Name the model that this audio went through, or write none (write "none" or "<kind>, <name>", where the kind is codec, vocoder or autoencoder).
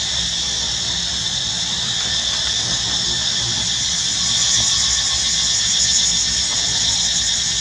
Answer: none